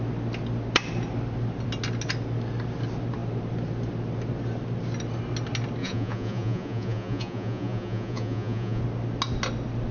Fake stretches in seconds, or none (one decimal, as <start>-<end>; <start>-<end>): 5.8-8.8